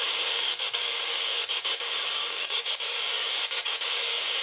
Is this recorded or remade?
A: remade